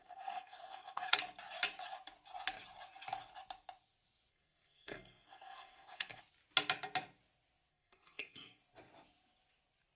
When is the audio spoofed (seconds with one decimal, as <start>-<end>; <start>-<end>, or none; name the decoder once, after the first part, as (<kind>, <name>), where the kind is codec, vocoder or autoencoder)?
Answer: 0.0-1.2 (codec, SNAC); 4.3-6.2; 7.7-8.6